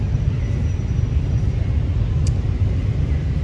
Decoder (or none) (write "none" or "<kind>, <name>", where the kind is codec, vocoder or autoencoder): none